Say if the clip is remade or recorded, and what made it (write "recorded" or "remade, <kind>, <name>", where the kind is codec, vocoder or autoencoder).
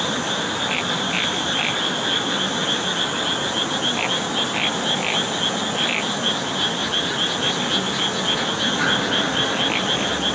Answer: recorded